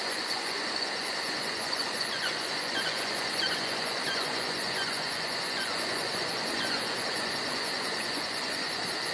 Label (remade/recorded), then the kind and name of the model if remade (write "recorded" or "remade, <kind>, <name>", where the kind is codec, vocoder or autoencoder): remade, vocoder, Vocos